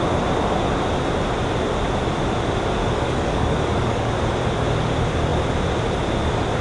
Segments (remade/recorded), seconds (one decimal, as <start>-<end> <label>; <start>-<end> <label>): 0.0-2.8 recorded; 2.8-4.1 remade; 4.1-6.6 recorded